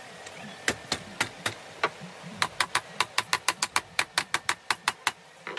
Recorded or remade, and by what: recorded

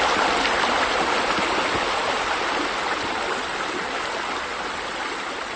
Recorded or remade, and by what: recorded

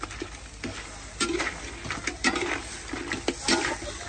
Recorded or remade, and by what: recorded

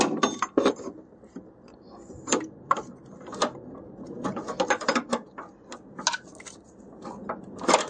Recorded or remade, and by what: recorded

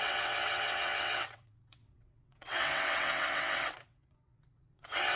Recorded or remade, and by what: remade, vocoder, WaveNeXt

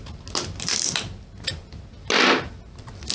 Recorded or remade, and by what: recorded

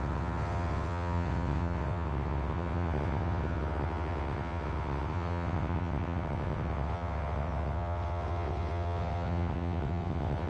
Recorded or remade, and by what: remade, vocoder, WaveNeXt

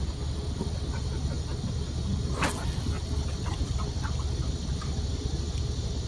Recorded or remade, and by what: recorded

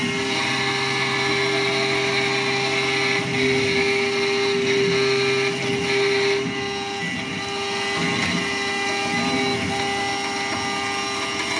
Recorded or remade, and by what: recorded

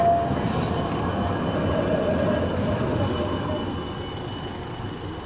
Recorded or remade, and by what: recorded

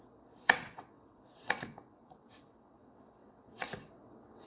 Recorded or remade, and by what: remade, vocoder, WaveNeXt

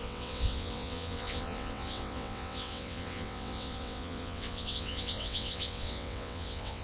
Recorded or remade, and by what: remade, vocoder, WaveNeXt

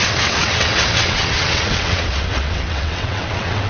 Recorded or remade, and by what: remade, vocoder, WaveNeXt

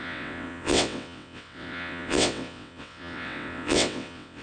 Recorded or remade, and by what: remade, vocoder, WaveNeXt